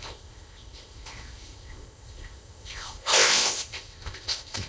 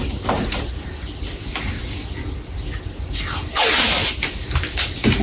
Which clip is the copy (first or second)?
first